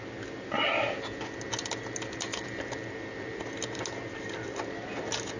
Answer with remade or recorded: recorded